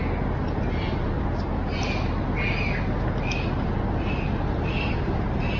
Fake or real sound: real